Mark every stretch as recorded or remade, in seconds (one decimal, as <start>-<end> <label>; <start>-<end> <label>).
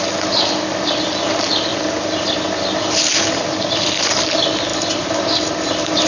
0.0-1.7 recorded; 1.7-4.2 remade; 4.2-4.7 recorded; 4.7-5.4 remade; 5.4-6.1 recorded